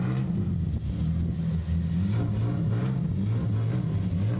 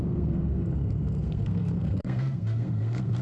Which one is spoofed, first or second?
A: second